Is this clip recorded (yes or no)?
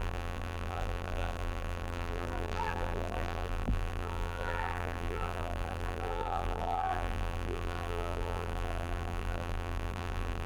no